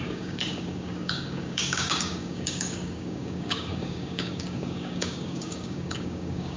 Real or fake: fake